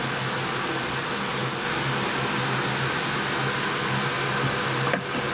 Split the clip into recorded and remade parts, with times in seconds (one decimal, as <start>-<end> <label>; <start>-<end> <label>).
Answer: 0.0-5.3 recorded